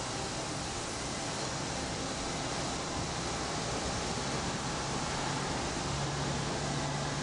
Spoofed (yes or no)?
no